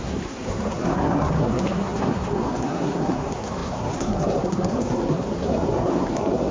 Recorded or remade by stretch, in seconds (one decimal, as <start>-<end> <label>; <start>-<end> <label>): 0.0-6.5 remade